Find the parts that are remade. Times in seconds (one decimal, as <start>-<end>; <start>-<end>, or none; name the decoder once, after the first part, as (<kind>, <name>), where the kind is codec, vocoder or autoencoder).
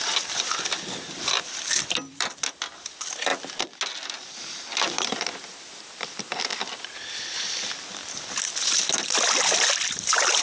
0.0-3.3 (vocoder, BigVGAN v2); 4.1-10.4